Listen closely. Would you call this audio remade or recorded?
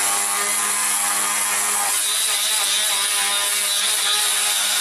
recorded